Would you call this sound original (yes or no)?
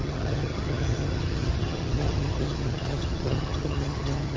no